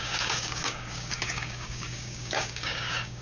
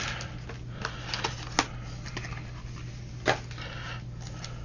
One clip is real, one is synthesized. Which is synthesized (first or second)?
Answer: first